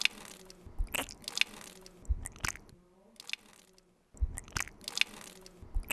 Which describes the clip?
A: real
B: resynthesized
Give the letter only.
A